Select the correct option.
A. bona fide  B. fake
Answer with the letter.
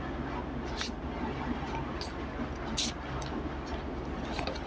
A